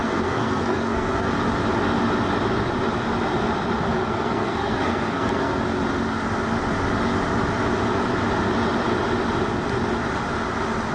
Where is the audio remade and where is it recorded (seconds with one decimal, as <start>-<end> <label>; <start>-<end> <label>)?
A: 0.0-1.3 remade; 1.3-3.9 recorded; 3.9-5.6 remade; 5.6-10.9 recorded